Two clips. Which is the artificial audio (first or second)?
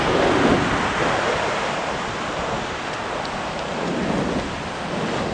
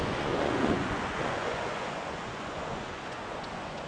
second